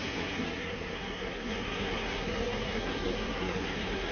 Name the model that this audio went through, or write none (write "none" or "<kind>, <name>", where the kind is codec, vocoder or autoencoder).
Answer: codec, SNAC